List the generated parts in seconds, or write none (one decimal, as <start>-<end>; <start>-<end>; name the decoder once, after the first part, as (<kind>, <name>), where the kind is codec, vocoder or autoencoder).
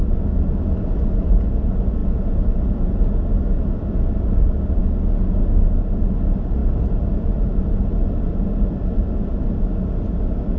none